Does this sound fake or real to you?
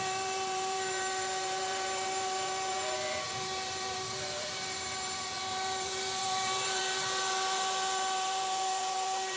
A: fake